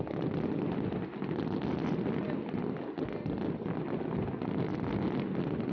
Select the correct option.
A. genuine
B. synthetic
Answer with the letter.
A